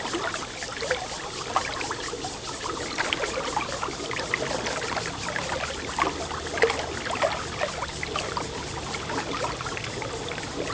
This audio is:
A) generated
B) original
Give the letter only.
B